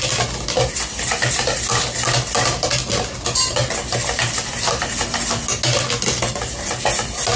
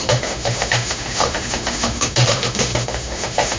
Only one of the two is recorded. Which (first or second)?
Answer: first